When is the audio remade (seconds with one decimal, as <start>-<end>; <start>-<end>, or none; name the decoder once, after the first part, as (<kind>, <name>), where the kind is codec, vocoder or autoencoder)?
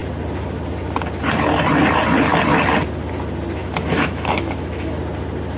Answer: 3.6-5.0 (autoencoder, DAC-VAE)